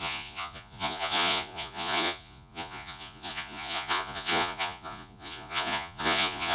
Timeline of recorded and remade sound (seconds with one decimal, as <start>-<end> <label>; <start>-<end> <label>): 0.0-6.5 remade